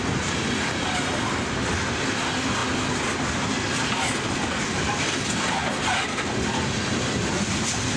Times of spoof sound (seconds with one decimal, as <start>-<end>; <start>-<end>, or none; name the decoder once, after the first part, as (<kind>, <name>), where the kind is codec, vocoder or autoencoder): none